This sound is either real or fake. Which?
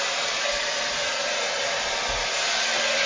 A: real